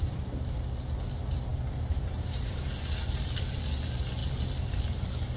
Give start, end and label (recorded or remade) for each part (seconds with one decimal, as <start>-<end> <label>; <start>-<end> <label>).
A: 0.0-1.5 recorded; 1.5-2.6 remade; 2.6-5.4 recorded